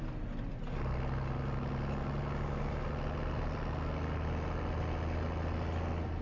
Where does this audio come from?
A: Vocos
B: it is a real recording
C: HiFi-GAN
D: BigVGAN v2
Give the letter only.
B